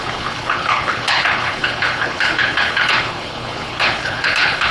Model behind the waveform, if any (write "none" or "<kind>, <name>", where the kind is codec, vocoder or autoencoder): codec, HILCodec